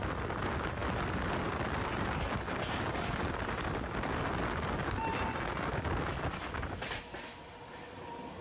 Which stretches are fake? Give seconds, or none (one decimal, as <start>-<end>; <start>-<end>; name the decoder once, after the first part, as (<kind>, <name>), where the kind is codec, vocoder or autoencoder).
none